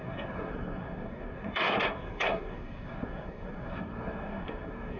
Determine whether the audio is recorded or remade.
remade